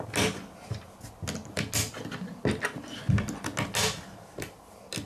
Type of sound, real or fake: real